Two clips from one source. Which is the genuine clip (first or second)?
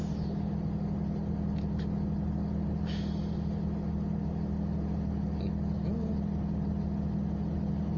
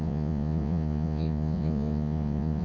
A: first